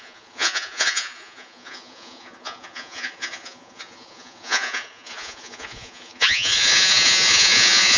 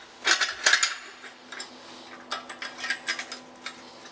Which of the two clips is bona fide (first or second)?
second